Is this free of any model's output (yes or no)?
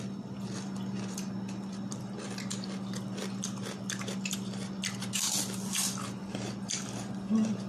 no